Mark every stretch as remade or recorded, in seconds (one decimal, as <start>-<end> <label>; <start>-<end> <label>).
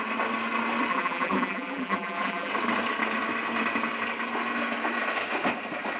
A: 0.0-0.9 recorded; 0.9-2.5 remade; 2.5-6.0 recorded